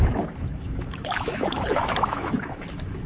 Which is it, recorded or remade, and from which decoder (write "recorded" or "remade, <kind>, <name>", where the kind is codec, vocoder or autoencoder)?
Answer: remade, autoencoder, DAC-VAE